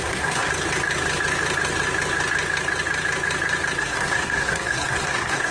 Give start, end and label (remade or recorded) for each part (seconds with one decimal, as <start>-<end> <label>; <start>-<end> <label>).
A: 0.0-0.5 remade; 0.5-3.8 recorded; 3.8-5.5 remade